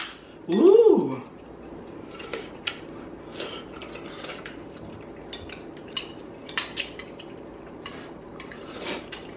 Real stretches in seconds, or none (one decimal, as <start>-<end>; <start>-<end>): 3.8-4.3

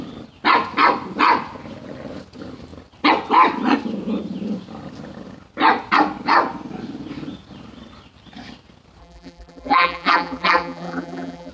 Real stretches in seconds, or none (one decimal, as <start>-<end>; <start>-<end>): 0.0-9.0

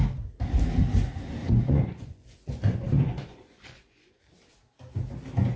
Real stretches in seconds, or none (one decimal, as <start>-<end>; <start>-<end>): 0.0-1.4; 4.2-5.6

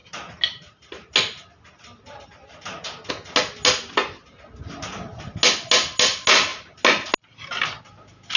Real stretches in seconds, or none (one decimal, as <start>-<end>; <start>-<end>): 0.0-8.4

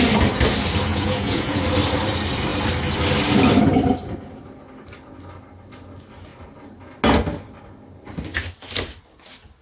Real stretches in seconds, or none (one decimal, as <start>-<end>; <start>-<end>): 0.0-0.9; 1.6-9.6

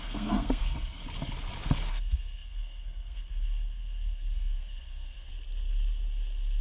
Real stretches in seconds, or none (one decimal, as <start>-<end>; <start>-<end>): 1.0-1.9; 5.3-6.6

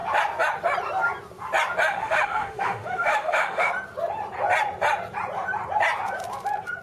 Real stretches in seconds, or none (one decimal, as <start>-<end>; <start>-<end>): 0.0-1.9; 3.7-6.8

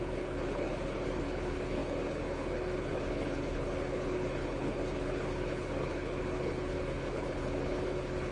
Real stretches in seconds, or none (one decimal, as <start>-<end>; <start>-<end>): none